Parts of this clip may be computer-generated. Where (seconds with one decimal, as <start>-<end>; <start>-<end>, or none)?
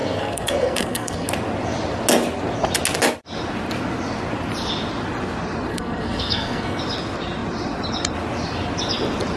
0.0-1.3; 5.7-6.8